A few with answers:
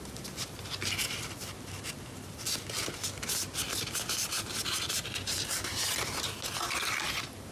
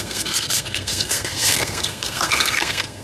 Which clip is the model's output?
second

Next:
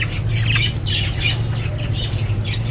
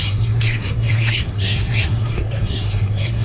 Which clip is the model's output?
second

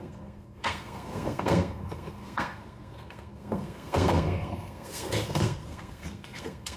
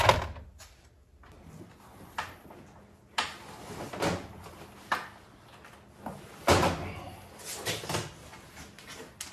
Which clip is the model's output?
first